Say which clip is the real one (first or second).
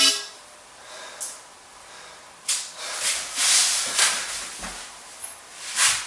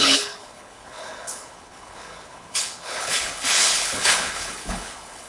first